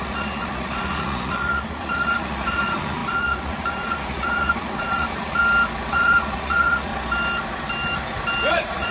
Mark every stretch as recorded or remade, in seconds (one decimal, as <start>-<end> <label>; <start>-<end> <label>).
0.0-5.4 remade; 5.4-5.9 recorded; 5.9-6.9 remade; 6.9-8.5 recorded; 8.5-8.9 remade